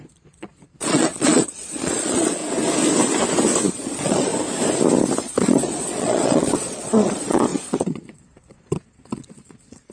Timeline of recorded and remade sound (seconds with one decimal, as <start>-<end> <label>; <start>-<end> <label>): 0.0-2.4 remade; 2.4-3.7 recorded; 3.7-4.3 remade; 4.3-5.2 recorded; 5.2-9.9 remade